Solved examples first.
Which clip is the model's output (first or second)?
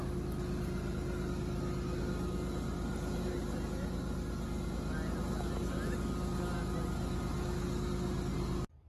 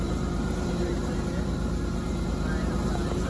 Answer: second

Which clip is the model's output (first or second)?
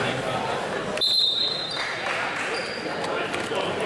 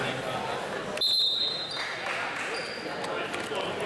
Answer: first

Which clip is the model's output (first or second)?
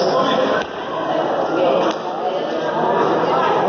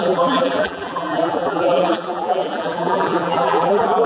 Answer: second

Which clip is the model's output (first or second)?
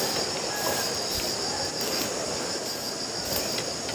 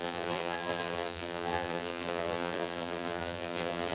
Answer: second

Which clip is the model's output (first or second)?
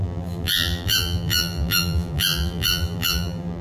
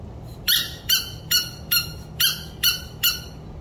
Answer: first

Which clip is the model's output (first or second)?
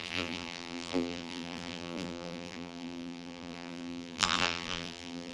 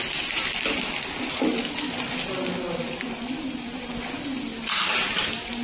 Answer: first